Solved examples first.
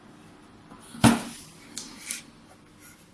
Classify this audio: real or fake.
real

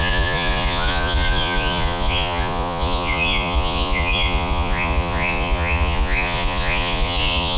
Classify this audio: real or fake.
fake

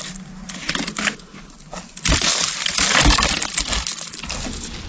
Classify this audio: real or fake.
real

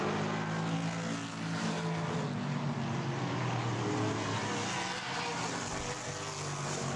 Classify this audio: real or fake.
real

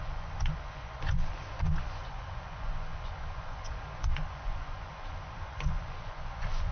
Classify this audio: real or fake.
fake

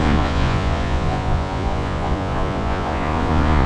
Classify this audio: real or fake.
fake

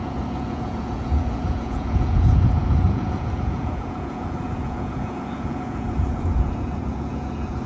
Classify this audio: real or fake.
fake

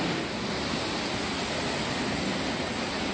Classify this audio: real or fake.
real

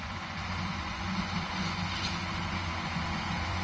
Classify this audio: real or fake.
fake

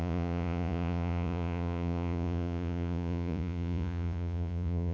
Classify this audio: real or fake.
fake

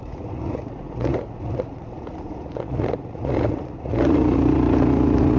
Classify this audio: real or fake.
fake